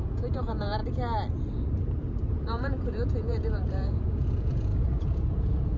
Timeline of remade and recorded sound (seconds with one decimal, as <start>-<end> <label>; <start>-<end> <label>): 0.0-0.8 remade; 0.8-2.3 recorded; 2.3-5.8 remade